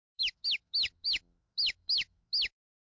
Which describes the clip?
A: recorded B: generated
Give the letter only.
B